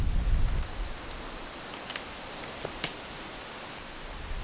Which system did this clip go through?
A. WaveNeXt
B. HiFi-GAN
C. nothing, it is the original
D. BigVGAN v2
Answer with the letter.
C